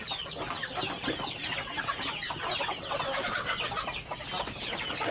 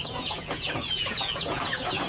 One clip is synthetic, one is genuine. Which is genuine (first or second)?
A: first